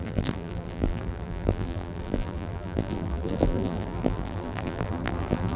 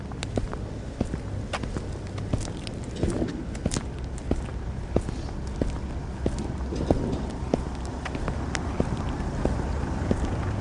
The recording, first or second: second